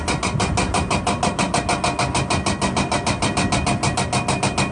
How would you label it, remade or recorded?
recorded